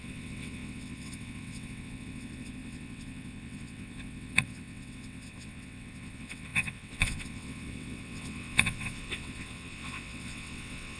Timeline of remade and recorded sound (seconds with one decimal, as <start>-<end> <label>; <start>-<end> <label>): 0.0-11.0 remade